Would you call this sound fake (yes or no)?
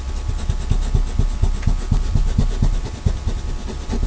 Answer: no